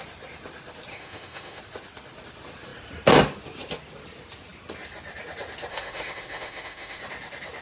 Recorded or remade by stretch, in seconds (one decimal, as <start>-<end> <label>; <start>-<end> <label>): 0.0-0.9 recorded; 0.9-1.6 remade; 1.6-5.7 recorded; 5.7-7.0 remade; 7.0-7.6 recorded